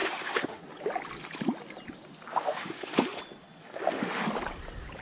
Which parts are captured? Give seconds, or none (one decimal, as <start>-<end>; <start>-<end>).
0.6-2.3; 3.2-3.6; 4.2-5.0